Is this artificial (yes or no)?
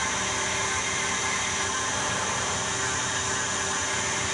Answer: no